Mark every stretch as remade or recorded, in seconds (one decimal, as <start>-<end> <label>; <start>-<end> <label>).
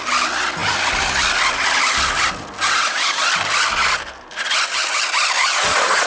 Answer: 0.0-5.4 recorded; 5.4-6.1 remade